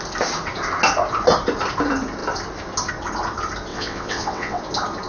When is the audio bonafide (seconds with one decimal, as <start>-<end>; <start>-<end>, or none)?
0.0-3.7; 4.6-5.1